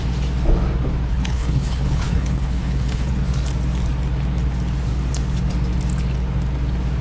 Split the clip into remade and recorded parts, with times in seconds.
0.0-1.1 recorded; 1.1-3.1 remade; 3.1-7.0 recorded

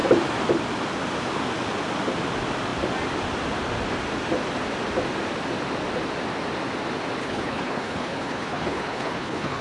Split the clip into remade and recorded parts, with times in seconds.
0.0-7.2 recorded; 7.2-9.6 remade

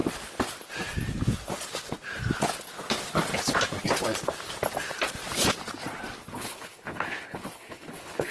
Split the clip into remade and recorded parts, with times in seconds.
0.0-6.3 recorded; 6.3-8.3 remade

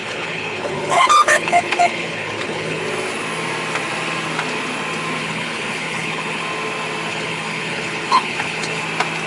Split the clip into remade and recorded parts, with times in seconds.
0.0-2.8 remade; 2.8-5.2 recorded; 5.2-6.4 remade; 6.4-7.1 recorded; 7.1-8.8 remade; 8.8-9.3 recorded

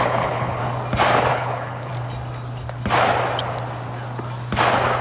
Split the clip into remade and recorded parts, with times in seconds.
0.0-0.6 remade; 0.6-1.3 recorded; 1.3-1.9 remade; 1.9-5.0 recorded

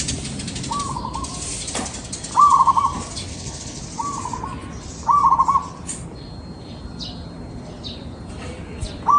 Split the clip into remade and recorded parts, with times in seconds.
0.0-3.3 recorded; 3.3-3.8 remade; 3.8-9.2 recorded